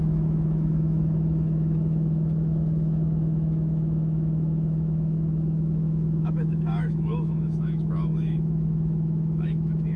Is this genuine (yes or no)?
no